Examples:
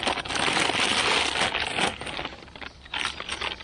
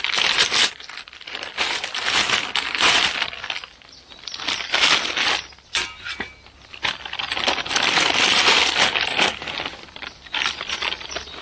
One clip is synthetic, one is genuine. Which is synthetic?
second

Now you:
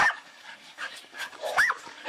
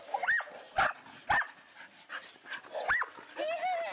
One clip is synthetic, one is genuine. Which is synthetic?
first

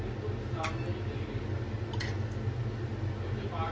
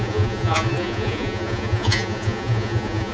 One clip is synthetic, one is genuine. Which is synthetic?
second